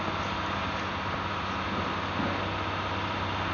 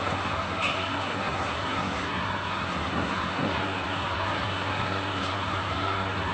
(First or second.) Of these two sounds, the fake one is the second